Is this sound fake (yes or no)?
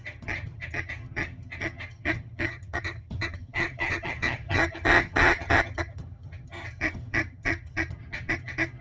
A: yes